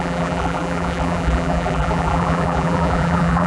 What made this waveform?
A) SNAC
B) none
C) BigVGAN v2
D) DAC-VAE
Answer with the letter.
C